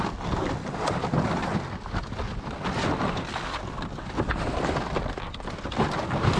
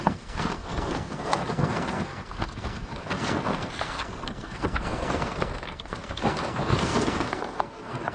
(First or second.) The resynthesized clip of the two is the second